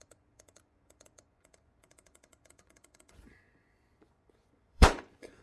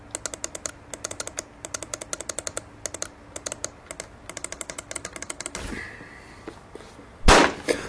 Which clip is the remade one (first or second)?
first